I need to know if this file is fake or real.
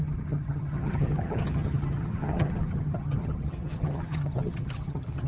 fake